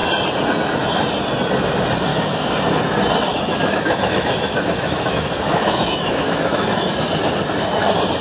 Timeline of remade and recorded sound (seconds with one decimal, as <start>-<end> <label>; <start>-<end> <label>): 0.0-2.1 recorded; 2.1-2.6 remade; 2.6-3.3 recorded; 3.3-6.9 remade; 6.9-8.2 recorded